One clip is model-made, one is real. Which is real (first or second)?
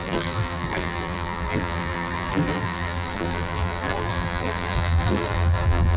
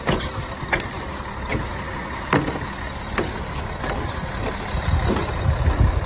second